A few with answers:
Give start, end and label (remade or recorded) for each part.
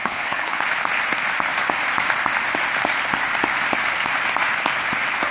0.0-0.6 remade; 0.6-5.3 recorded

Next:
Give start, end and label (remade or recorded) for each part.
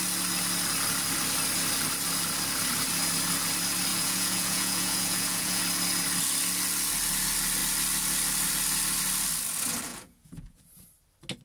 0.0-3.9 recorded; 3.9-5.6 remade; 5.6-9.9 recorded; 9.9-10.8 remade; 10.8-11.4 recorded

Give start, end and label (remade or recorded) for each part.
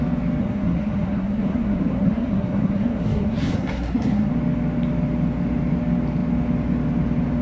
0.0-0.4 recorded; 0.4-4.3 remade; 4.3-7.4 recorded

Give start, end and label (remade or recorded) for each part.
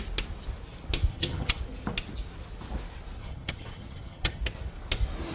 0.0-1.1 recorded; 1.1-1.6 remade; 1.6-3.2 recorded; 3.2-4.4 remade; 4.4-5.3 recorded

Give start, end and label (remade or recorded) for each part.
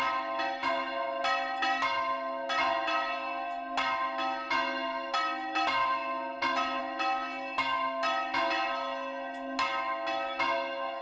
0.0-11.0 recorded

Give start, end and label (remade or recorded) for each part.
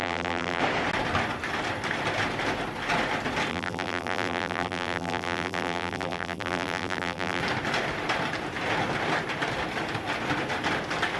0.0-0.6 remade; 0.6-3.5 recorded; 3.5-7.4 remade; 7.4-11.2 recorded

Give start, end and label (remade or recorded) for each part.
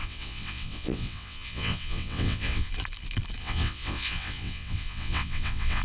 0.0-2.7 remade; 2.7-3.4 recorded; 3.4-5.8 remade